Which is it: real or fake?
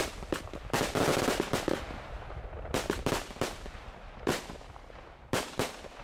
fake